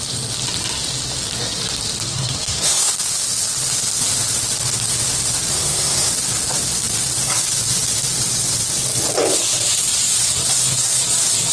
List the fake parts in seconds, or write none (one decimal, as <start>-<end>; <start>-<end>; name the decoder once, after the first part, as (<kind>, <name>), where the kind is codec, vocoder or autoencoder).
2.1-2.9 (codec, SNAC); 5.5-6.1